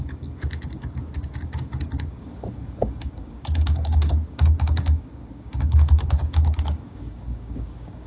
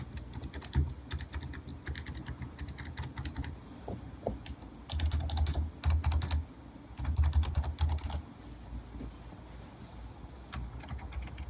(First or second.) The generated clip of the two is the first